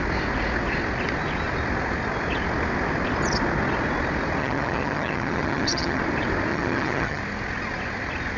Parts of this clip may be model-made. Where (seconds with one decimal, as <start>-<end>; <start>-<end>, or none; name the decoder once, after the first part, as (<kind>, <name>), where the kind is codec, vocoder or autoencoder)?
4.4-6.0 (vocoder, HiFi-GAN); 6.5-7.2